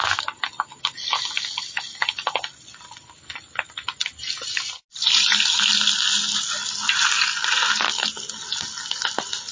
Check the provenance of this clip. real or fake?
real